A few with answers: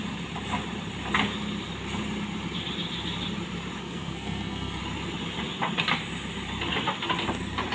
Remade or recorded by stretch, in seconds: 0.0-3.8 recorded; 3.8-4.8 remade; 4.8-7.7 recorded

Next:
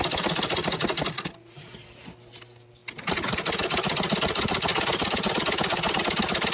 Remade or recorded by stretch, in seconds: 0.0-6.5 recorded